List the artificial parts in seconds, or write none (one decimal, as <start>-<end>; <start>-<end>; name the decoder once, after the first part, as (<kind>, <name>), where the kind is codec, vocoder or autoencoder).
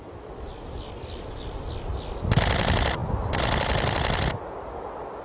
none